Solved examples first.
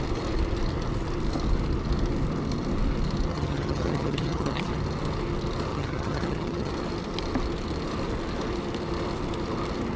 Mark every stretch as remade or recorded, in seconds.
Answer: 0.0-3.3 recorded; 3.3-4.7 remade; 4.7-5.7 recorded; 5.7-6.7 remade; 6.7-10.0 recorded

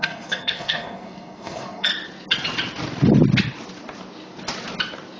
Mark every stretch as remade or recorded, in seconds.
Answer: 0.0-1.9 remade; 1.9-5.2 recorded

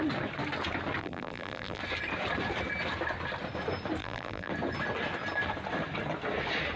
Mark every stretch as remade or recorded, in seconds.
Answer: 0.0-1.0 recorded; 1.0-1.8 remade; 1.8-4.0 recorded; 4.0-4.5 remade; 4.5-6.8 recorded

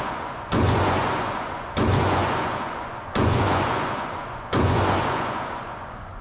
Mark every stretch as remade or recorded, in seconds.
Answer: 0.0-6.2 remade

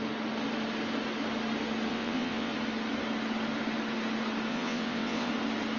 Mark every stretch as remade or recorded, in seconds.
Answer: 0.0-1.9 recorded; 1.9-2.5 remade; 2.5-4.5 recorded; 4.5-5.3 remade; 5.3-5.8 recorded

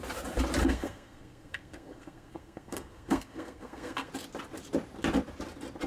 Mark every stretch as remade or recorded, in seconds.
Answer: 0.0-0.6 recorded; 0.6-4.1 remade; 4.1-5.9 recorded

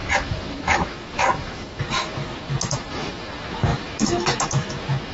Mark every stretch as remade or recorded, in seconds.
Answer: 0.0-5.1 remade